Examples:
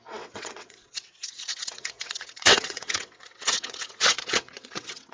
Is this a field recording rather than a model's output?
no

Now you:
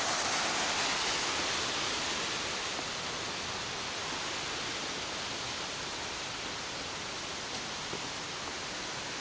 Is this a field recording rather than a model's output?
yes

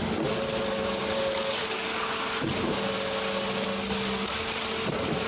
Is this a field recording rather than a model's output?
yes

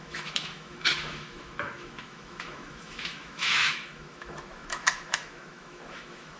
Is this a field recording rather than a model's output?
no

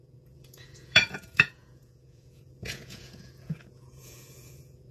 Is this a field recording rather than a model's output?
no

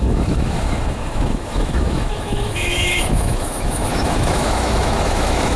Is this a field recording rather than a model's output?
no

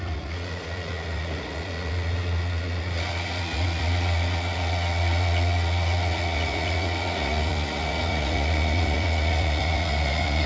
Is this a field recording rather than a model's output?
no